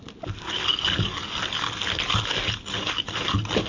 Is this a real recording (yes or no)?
yes